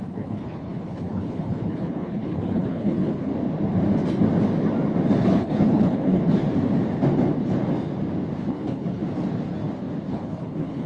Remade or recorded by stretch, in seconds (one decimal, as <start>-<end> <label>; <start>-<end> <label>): 0.0-3.3 remade; 3.3-5.2 recorded; 5.2-6.2 remade; 6.2-8.5 recorded; 8.5-9.0 remade; 9.0-10.1 recorded; 10.1-10.9 remade